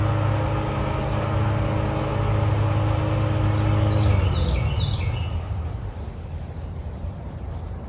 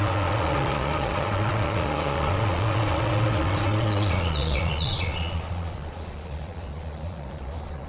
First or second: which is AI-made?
second